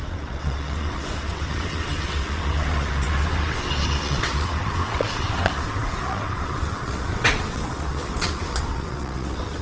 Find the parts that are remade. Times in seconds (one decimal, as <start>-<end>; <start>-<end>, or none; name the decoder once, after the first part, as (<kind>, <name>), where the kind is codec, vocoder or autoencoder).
0.0-9.6 (vocoder, WaveNeXt)